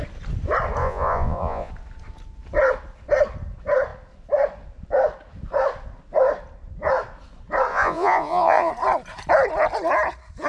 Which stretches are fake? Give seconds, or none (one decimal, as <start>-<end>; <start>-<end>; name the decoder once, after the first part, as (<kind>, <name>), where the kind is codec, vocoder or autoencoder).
0.8-1.7 (vocoder, Vocos); 7.7-8.7